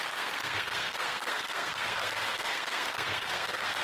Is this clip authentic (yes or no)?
no